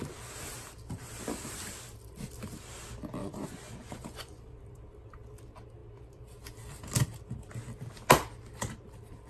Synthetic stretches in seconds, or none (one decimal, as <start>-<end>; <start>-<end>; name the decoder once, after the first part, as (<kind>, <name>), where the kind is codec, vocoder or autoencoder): 3.2-4.4 (vocoder, Vocos)